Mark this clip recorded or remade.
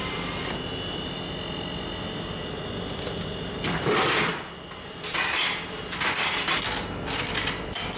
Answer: recorded